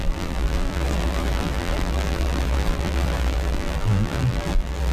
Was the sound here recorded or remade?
remade